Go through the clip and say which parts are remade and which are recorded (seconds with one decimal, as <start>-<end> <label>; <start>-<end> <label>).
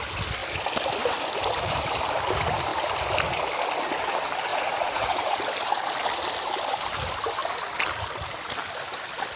0.0-4.5 recorded; 4.5-5.4 remade; 5.4-9.4 recorded